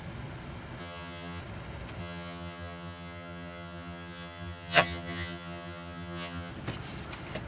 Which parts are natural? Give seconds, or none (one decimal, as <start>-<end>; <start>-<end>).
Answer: 0.0-0.8; 1.4-2.0; 6.5-7.5